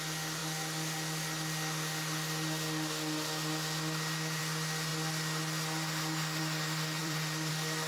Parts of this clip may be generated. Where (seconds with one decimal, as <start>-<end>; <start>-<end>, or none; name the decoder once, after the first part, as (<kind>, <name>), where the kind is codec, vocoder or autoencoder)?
7.0-7.5 (vocoder, BigVGAN v2)